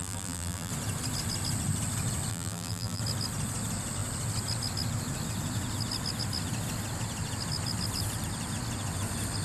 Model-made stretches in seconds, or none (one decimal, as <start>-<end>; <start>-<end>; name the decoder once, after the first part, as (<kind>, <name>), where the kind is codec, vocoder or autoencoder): 0.0-0.7 (vocoder, BigVGAN v2); 2.3-3.0